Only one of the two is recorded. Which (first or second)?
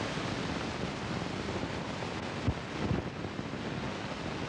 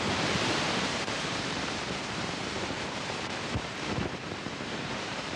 first